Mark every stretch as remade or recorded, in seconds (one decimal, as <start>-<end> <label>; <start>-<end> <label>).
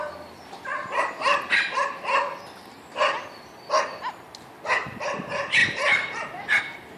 0.0-7.0 recorded